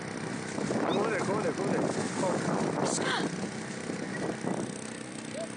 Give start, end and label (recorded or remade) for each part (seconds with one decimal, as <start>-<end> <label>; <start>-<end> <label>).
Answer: 0.0-5.6 recorded